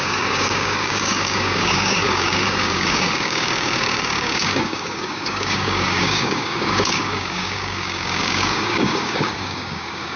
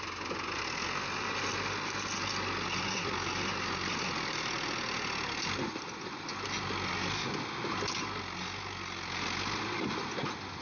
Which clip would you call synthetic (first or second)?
first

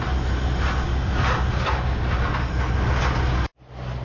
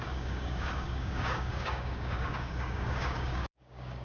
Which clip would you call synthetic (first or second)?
second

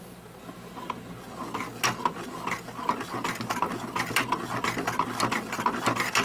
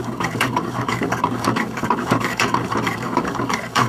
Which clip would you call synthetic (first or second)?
second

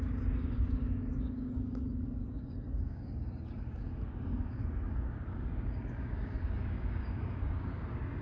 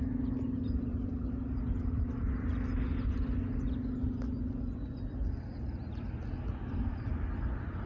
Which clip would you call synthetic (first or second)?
first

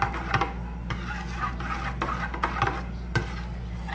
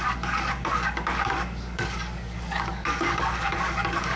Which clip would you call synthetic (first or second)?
second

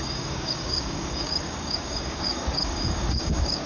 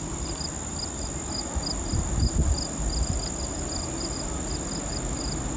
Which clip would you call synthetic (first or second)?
first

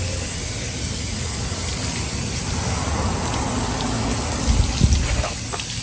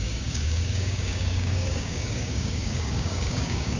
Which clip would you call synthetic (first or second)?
second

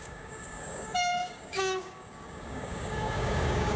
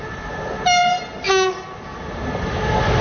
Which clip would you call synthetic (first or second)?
first